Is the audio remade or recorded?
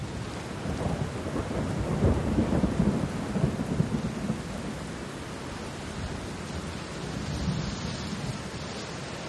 recorded